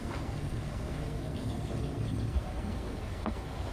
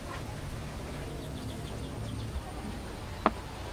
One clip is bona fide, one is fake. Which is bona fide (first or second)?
second